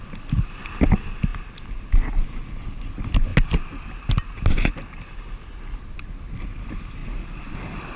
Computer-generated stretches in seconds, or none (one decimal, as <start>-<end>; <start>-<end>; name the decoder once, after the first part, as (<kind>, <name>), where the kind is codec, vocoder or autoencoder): none